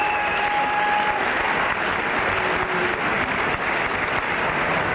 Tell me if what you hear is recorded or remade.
recorded